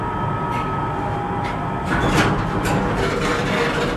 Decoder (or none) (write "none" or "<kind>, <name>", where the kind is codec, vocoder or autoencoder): none